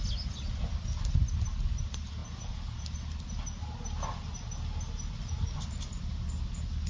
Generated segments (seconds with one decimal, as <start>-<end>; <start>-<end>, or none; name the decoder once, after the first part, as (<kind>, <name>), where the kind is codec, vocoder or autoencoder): none